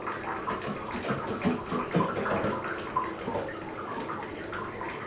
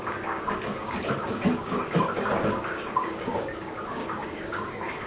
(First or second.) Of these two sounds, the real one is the first